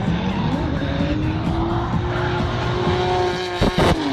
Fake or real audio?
real